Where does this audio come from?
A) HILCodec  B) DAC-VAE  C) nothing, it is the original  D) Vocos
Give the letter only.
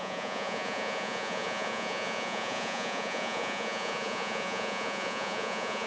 D